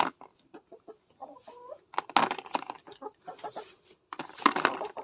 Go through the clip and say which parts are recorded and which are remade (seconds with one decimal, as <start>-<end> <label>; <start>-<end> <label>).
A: 0.0-5.0 recorded